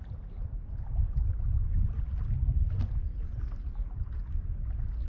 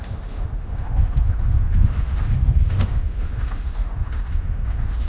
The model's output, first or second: second